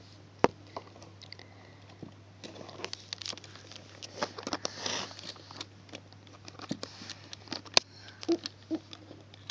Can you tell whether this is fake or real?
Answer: real